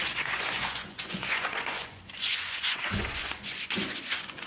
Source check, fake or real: fake